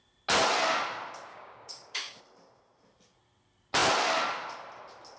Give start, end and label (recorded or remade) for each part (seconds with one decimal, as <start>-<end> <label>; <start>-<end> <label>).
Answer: 0.0-1.3 recorded; 1.3-2.2 remade; 2.2-5.2 recorded